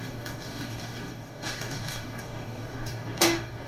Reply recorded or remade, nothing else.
remade